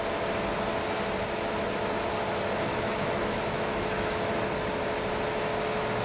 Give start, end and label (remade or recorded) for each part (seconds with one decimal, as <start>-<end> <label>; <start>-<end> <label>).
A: 0.0-2.7 recorded; 2.7-4.1 remade; 4.1-6.0 recorded